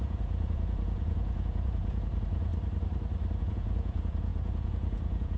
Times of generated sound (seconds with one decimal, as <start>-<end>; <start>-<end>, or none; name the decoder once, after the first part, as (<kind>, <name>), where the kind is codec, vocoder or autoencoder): 0.0-2.5 (vocoder, Vocos); 3.4-5.4